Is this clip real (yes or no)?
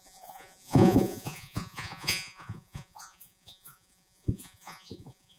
no